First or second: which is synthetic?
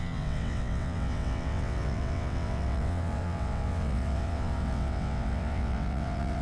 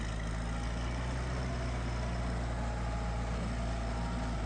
first